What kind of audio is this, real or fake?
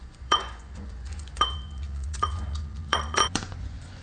fake